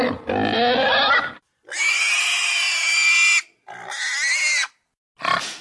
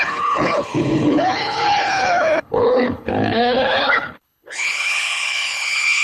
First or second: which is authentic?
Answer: first